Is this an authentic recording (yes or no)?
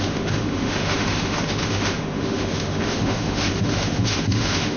no